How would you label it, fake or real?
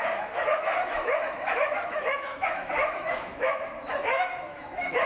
fake